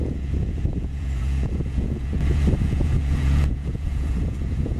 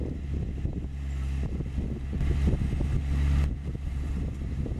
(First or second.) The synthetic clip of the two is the first